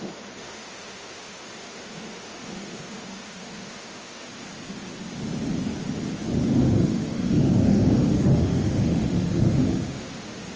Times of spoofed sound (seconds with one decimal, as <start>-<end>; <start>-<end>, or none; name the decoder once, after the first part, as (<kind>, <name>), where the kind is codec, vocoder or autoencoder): 0.0-4.3 (autoencoder, DAC-VAE); 6.6-10.6